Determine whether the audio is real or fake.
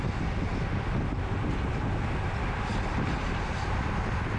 real